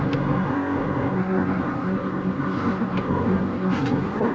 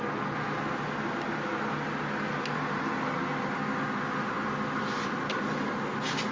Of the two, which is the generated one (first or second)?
first